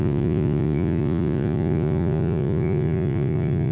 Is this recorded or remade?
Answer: remade